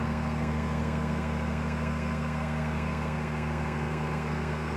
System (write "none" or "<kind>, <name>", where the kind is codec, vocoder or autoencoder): codec, SNAC